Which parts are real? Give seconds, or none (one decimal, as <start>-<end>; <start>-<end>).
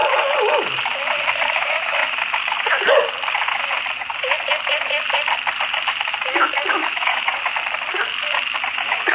0.0-1.5; 2.0-6.7; 7.3-8.7